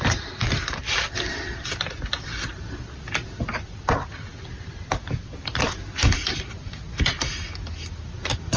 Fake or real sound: real